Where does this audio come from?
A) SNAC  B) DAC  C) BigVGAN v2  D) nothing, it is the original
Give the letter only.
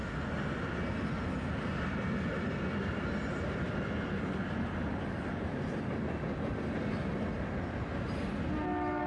D